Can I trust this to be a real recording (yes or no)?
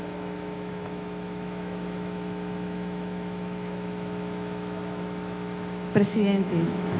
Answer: no